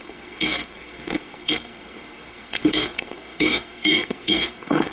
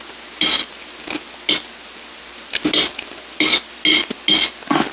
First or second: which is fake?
first